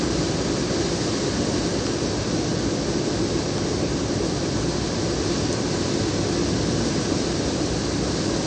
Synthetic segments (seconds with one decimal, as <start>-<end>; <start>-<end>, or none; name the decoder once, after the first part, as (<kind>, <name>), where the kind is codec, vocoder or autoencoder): none